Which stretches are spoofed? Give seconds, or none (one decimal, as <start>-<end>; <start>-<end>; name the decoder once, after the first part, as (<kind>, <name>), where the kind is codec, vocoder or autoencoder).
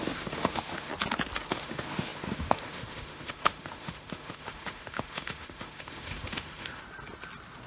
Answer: 0.0-0.9 (autoencoder, DAC-VAE); 1.5-6.8